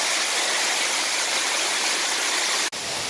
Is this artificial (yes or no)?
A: no